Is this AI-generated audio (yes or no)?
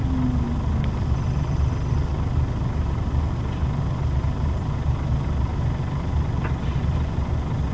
no